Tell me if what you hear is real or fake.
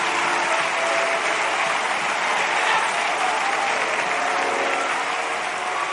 real